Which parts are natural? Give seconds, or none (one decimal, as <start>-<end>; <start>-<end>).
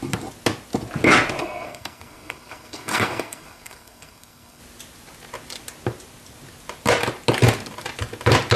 0.0-1.4; 4.6-8.6